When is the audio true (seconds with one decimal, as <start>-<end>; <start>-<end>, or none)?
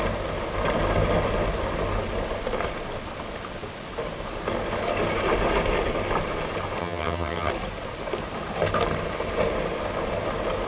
0.0-6.8; 7.5-10.7